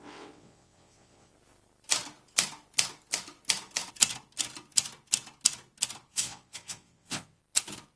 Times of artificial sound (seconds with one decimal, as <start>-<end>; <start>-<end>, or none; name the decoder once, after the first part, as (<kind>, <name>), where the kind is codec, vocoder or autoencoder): 0.0-1.3 (vocoder, WaveNeXt); 6.1-7.4